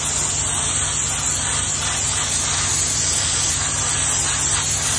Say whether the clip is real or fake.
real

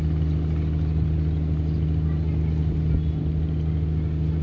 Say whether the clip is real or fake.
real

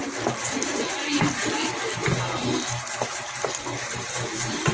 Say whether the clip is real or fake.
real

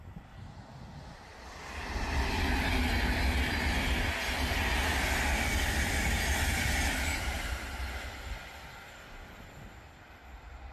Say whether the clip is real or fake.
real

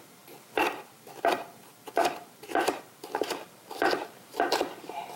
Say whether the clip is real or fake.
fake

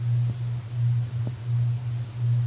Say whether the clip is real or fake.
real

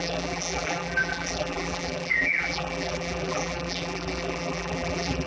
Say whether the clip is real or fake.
fake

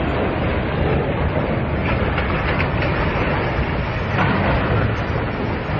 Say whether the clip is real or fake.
real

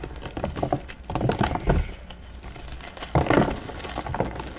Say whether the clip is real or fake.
real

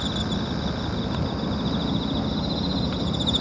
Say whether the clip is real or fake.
real